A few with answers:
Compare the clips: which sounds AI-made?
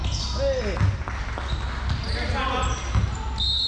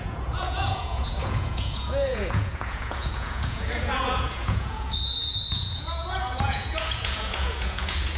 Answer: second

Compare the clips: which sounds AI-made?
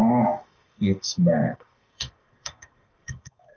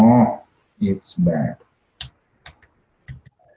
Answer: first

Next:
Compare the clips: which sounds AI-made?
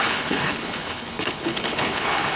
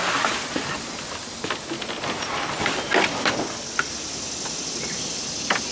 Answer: first